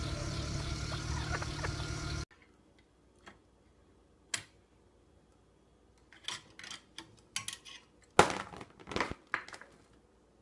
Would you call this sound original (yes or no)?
yes